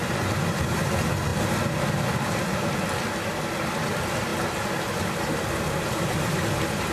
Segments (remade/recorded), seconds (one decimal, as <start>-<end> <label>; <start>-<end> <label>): 0.0-6.9 recorded